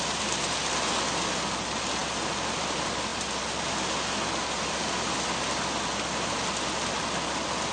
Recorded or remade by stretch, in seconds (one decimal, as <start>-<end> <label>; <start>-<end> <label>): 0.0-7.7 recorded